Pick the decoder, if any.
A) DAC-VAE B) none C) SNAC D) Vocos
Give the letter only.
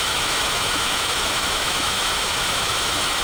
A